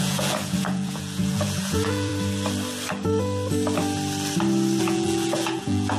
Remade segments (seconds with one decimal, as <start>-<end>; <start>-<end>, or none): 0.0-2.1; 4.8-6.0